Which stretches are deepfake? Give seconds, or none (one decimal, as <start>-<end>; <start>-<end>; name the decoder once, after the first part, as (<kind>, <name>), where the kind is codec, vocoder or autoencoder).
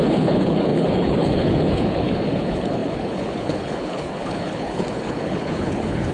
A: 0.0-6.1 (codec, HILCodec)